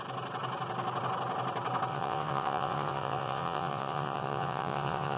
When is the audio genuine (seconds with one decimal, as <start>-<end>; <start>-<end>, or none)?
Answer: 0.0-1.9